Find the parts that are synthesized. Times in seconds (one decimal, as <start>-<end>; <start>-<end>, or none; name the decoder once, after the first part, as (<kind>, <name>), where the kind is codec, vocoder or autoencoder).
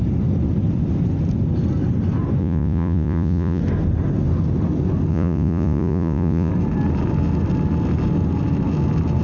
2.4-3.6 (vocoder, Vocos); 5.1-6.5